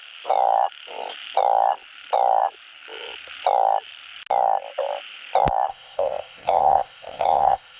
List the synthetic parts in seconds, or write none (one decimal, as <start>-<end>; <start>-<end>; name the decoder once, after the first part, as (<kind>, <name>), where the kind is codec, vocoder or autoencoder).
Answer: 5.7-7.8 (codec, ZipCodec)